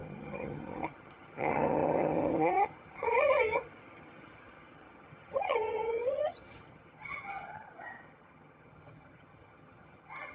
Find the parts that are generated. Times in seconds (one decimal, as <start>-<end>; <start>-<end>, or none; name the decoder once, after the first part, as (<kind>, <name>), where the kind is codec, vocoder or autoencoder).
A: 0.0-10.3 (vocoder, HiFi-GAN)